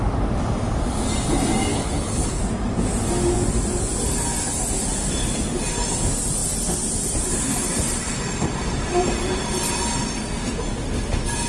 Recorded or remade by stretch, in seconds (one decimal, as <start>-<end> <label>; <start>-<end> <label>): 0.0-1.7 recorded; 1.7-2.4 remade; 2.4-11.5 recorded